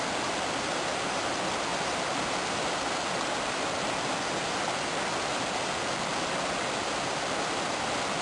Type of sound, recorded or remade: recorded